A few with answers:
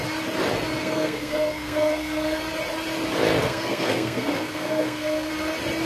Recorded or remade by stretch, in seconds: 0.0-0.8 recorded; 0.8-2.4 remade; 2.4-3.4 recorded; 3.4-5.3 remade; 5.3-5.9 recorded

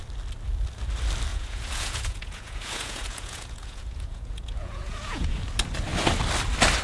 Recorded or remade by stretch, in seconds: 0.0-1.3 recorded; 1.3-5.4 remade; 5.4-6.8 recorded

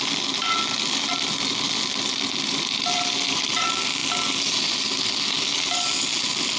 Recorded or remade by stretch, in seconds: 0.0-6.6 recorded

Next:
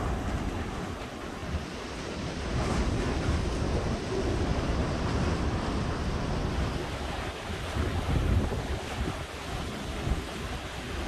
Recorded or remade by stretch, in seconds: 0.0-11.1 recorded

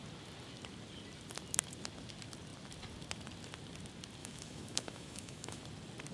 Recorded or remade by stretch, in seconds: 0.0-4.2 recorded; 4.2-5.6 remade; 5.6-6.1 recorded

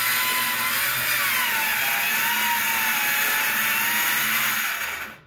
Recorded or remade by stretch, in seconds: 0.0-5.3 recorded